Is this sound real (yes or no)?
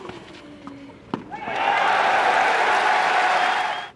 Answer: yes